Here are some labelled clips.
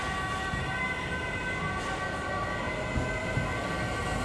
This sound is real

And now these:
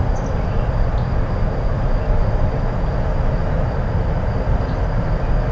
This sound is real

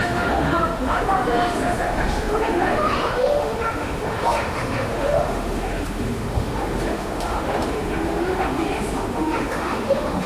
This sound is fake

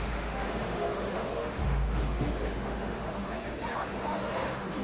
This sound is fake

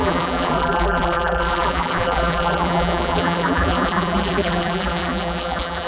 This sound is fake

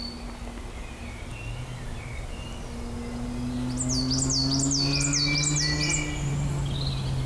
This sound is real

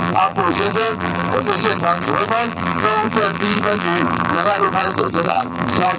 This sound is fake